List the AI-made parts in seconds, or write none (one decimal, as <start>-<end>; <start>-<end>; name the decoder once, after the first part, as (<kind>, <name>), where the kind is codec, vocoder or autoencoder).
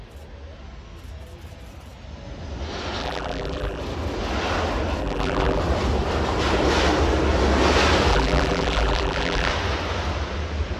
3.0-3.8 (vocoder, BigVGAN v2); 5.0-5.6; 8.1-9.5